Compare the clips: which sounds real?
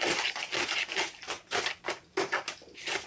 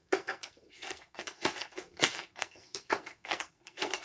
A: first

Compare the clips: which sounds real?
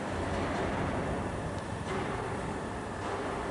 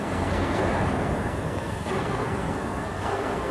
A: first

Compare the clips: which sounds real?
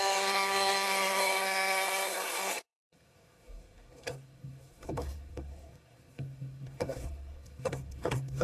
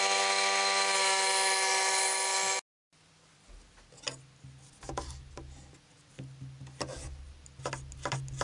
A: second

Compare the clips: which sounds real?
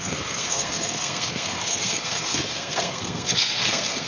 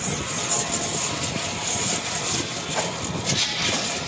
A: second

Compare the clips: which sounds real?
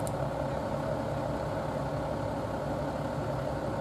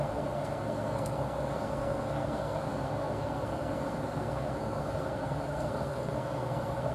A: first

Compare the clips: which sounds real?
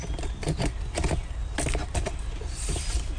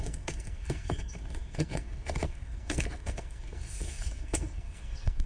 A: first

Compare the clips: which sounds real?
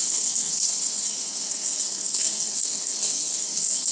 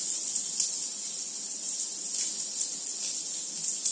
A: second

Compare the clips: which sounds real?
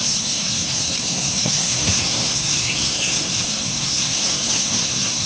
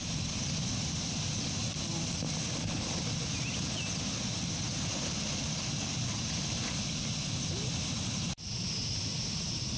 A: second